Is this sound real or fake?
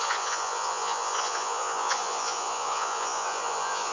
fake